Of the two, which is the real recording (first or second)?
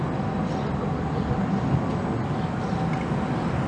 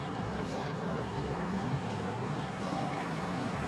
first